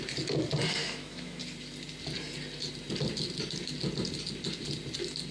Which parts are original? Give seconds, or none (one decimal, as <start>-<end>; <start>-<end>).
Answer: 0.0-0.8; 1.4-5.3